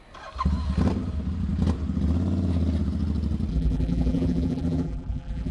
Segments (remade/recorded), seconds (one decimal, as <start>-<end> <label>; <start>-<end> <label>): 0.0-3.5 recorded; 3.5-5.5 remade